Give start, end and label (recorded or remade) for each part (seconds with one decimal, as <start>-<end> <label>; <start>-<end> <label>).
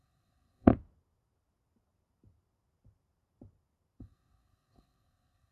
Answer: 0.0-0.7 remade; 0.7-4.0 recorded; 4.0-5.5 remade